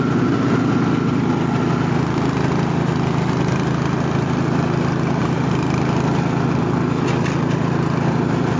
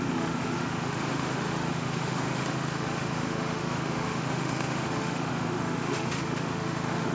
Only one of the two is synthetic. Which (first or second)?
second